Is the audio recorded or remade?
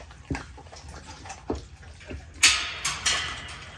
recorded